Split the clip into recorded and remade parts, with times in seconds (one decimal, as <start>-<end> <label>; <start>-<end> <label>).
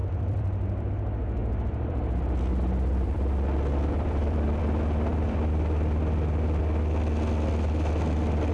0.0-0.9 remade; 0.9-1.4 recorded; 1.4-4.6 remade; 4.6-5.1 recorded; 5.1-6.6 remade; 6.6-8.5 recorded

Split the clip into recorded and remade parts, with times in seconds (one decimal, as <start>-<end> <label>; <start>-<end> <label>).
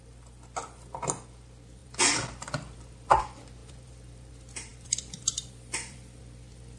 0.0-1.8 recorded; 1.8-3.2 remade; 3.2-3.6 recorded; 3.6-4.3 remade; 4.3-4.7 recorded; 4.7-6.2 remade; 6.2-6.8 recorded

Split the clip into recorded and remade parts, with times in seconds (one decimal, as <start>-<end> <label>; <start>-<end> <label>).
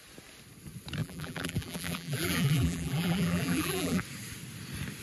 0.0-1.0 recorded; 1.0-4.0 remade; 4.0-5.0 recorded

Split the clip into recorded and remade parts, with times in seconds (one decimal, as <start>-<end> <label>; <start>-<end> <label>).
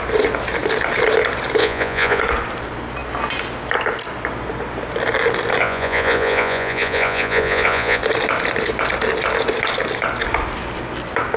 0.0-1.6 recorded; 1.6-2.2 remade; 2.2-5.6 recorded; 5.6-8.0 remade; 8.0-11.4 recorded